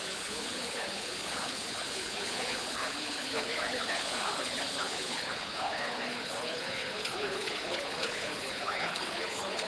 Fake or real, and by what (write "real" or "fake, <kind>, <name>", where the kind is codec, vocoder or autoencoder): fake, codec, HILCodec